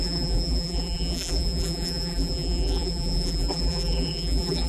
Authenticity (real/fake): fake